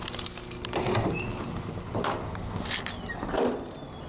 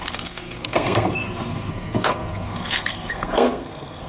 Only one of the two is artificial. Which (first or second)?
second